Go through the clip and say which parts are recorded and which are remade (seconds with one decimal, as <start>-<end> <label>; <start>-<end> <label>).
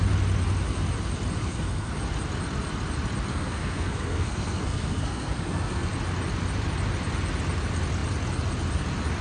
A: 0.0-1.4 recorded; 1.4-1.9 remade; 1.9-3.3 recorded; 3.3-5.9 remade; 5.9-9.2 recorded